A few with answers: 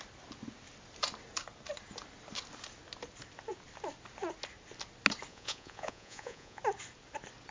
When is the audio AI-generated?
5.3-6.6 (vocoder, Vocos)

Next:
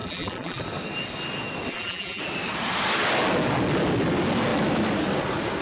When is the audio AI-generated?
0.0-0.6 (vocoder, BigVGAN v2); 1.7-2.2

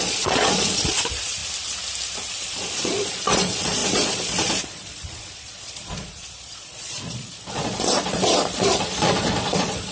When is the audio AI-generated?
0.0-1.4 (vocoder, Vocos); 2.3-9.9

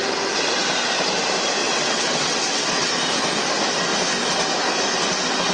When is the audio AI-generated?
1.6-2.9 (vocoder, WaveNeXt)

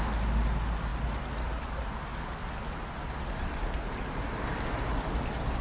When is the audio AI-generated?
none

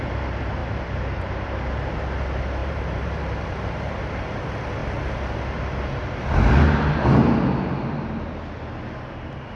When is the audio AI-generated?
0.6-1.3 (vocoder, BigVGAN v2); 2.6-4.1

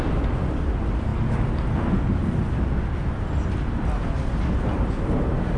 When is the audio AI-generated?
none

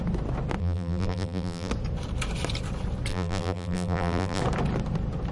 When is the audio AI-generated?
0.6-1.7 (vocoder, BigVGAN v2); 3.1-4.4